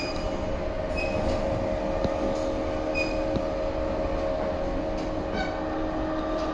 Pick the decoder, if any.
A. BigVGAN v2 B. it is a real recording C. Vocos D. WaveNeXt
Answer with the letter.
B